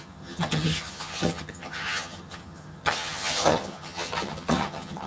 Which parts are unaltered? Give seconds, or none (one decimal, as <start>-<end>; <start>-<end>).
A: none